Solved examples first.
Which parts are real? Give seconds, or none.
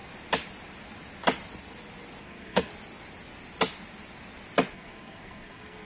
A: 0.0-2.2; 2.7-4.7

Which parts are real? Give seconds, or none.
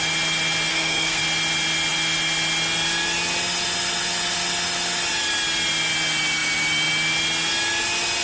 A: 0.0-0.7; 1.2-8.2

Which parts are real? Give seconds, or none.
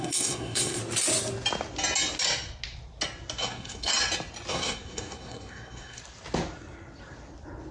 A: 0.8-3.4; 3.9-4.5; 6.0-7.7